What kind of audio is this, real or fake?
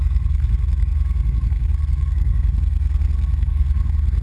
fake